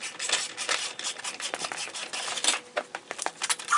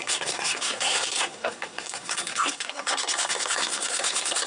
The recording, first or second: first